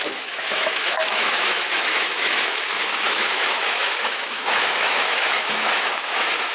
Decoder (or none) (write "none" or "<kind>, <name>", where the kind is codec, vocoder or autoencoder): autoencoder, DAC-VAE